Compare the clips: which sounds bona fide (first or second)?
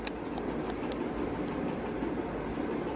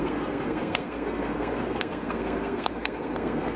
first